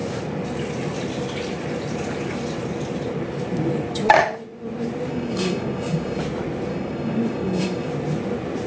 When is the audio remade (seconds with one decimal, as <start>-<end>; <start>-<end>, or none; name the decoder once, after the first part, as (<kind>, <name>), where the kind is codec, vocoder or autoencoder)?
5.1-6.2 (codec, DAC); 6.7-7.9